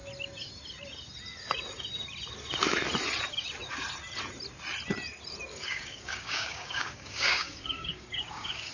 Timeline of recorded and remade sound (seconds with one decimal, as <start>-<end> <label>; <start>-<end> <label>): 0.0-5.5 recorded; 5.5-8.7 remade